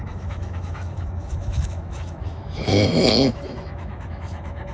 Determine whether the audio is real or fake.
fake